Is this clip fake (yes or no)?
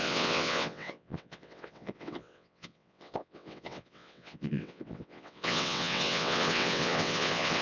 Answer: yes